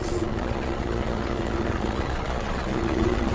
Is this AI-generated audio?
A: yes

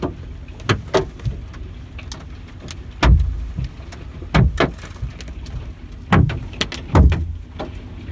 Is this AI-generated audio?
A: no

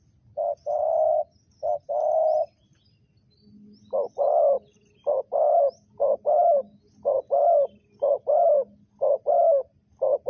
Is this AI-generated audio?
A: no